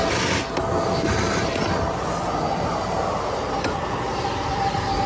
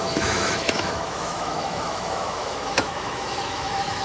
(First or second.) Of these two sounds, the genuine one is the first